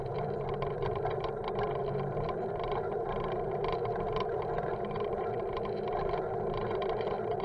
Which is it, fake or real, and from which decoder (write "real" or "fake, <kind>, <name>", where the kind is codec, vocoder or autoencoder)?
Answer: fake, vocoder, BigVGAN v2